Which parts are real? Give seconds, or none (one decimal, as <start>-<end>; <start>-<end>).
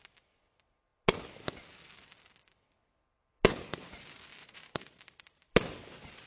0.0-4.4; 5.0-6.3